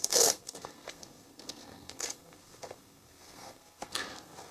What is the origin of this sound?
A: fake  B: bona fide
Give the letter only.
A